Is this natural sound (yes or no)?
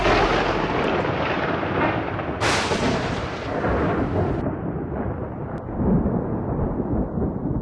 yes